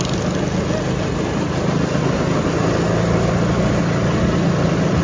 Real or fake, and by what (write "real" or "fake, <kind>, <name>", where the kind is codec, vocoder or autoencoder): real